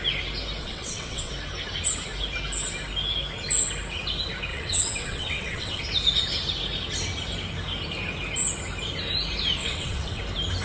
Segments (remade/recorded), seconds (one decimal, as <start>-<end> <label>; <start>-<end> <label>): 0.0-0.6 recorded; 0.6-1.3 remade; 1.3-4.5 recorded; 4.5-5.8 remade; 5.8-9.6 recorded; 9.6-10.2 remade; 10.2-10.6 recorded